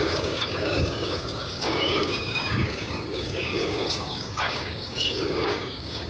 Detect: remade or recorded remade